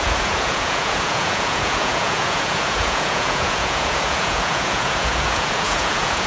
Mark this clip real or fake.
fake